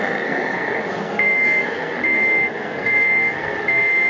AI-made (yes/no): yes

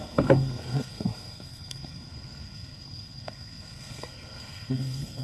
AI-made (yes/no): yes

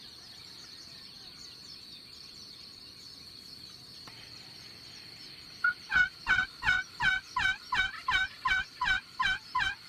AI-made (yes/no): yes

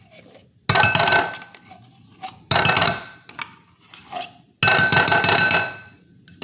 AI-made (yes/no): no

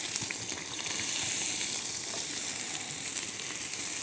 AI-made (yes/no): no